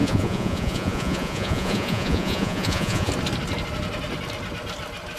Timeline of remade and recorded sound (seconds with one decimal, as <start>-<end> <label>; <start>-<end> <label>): 0.0-3.1 remade; 3.1-5.2 recorded